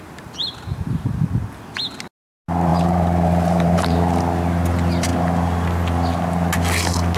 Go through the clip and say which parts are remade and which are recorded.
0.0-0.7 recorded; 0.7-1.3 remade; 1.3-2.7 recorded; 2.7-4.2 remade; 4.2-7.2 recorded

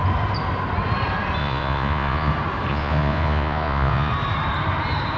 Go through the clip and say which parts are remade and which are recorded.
0.0-1.4 recorded; 1.4-2.3 remade; 2.3-2.7 recorded; 2.7-4.1 remade; 4.1-5.2 recorded

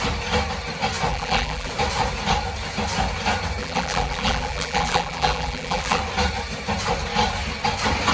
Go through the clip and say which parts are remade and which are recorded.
0.0-1.1 recorded; 1.1-1.7 remade; 1.7-3.6 recorded; 3.6-6.0 remade; 6.0-8.1 recorded

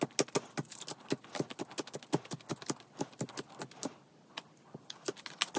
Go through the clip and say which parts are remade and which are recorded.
0.0-5.6 recorded